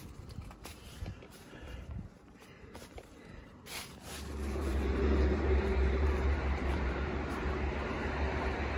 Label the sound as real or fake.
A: fake